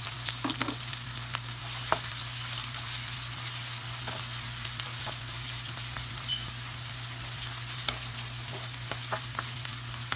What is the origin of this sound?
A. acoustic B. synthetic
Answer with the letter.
A